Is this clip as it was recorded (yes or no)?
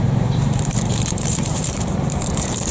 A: no